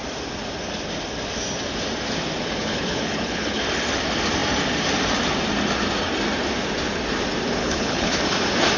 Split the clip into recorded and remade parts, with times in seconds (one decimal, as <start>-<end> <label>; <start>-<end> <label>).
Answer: 0.0-2.6 recorded; 2.6-3.6 remade; 3.6-7.6 recorded; 7.6-8.2 remade; 8.2-8.8 recorded